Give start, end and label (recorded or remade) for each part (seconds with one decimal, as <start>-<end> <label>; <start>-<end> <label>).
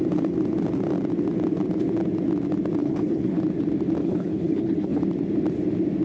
0.0-2.8 recorded; 2.8-3.4 remade; 3.4-4.0 recorded; 4.0-5.0 remade; 5.0-6.0 recorded